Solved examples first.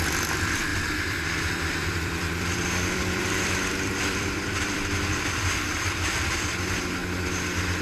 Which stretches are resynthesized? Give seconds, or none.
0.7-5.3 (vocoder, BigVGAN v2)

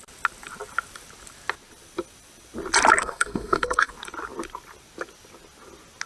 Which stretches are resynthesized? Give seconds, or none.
3.0-3.9 (codec, SNAC)

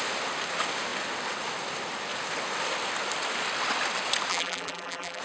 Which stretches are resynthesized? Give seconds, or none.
4.3-5.2 (vocoder, BigVGAN v2)

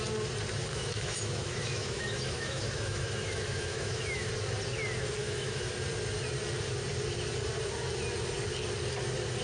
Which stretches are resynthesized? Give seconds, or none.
0.7-4.3 (autoencoder, DAC-VAE); 5.2-5.7

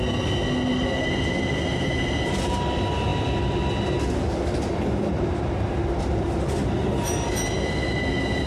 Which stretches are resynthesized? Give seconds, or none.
0.7-2.3 (vocoder, BigVGAN v2)

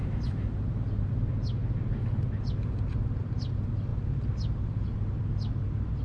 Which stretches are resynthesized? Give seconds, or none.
none

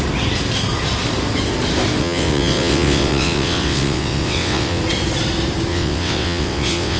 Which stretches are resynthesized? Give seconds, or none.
2.0-4.8 (vocoder, WaveNeXt); 5.7-7.0

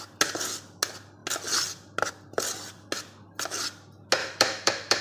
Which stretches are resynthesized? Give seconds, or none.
4.2-5.0 (autoencoder, DAC-VAE)